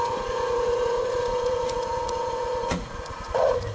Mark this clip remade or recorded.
remade